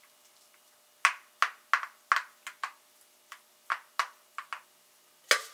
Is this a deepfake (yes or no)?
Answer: no